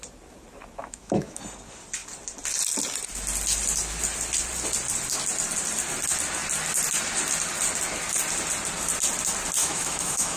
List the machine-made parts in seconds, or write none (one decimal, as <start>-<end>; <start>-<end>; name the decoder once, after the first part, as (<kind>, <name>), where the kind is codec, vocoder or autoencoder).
0.8-1.4 (autoencoder, DAC-VAE); 9.6-10.4